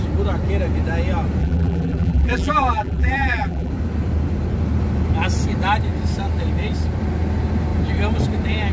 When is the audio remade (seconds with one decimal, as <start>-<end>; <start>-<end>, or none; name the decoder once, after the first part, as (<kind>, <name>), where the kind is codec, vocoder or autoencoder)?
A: 1.4-3.7 (vocoder, BigVGAN v2)